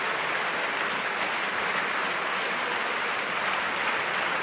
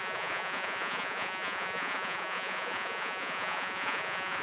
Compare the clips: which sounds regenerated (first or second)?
second